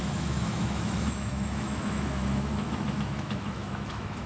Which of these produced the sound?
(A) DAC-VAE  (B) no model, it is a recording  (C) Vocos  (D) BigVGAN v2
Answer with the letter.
A